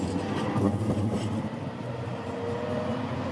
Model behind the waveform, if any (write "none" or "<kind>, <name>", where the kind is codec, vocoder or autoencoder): none